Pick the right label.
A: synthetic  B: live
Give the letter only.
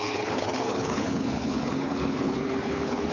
A